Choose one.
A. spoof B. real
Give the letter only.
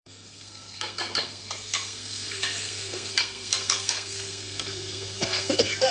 A